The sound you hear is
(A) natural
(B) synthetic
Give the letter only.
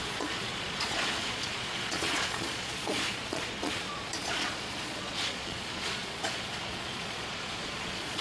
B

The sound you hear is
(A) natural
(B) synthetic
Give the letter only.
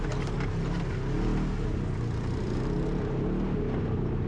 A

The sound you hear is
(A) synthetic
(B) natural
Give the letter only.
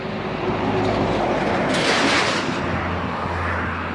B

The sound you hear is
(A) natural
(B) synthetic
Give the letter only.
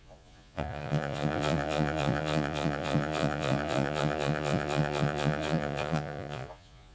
B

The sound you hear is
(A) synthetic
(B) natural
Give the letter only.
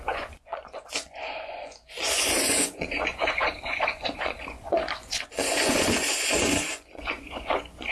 A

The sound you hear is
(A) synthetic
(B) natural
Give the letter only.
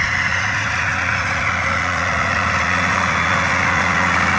A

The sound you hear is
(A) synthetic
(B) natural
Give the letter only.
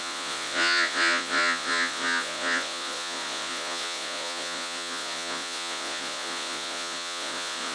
A